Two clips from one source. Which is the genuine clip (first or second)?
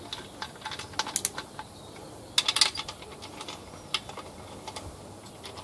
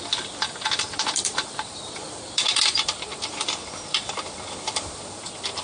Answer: first